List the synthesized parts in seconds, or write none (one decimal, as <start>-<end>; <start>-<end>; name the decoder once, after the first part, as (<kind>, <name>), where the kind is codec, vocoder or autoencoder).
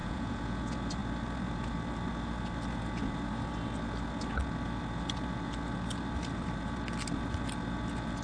0.0-0.6 (vocoder, Vocos)